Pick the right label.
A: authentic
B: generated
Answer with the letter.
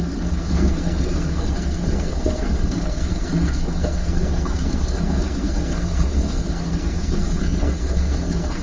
B